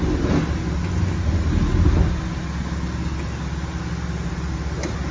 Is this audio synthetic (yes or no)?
no